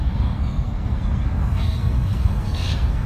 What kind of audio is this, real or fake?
fake